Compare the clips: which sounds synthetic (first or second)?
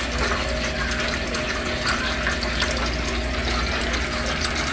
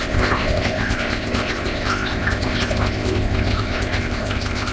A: second